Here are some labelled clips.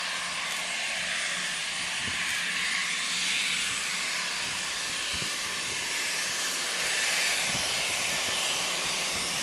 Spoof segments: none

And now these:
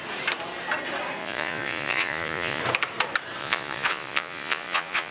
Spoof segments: 1.2-2.6 (vocoder, Vocos); 3.4-5.1

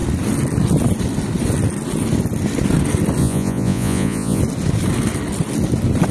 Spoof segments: 3.2-4.4 (vocoder, Vocos)

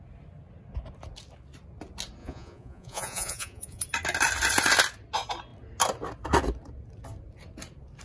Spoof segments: 2.2-3.8 (vocoder, Vocos)